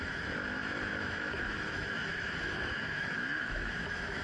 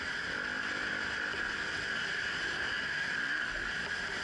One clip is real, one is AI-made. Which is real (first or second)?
second